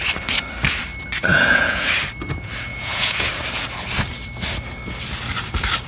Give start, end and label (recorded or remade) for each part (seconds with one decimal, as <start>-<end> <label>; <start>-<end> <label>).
0.0-1.3 recorded; 1.3-1.9 remade; 1.9-2.7 recorded; 2.7-3.3 remade; 3.3-5.9 recorded